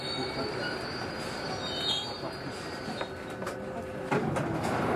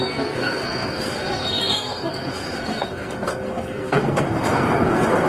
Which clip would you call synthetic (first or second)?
second